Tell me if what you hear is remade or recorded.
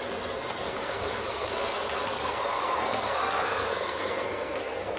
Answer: remade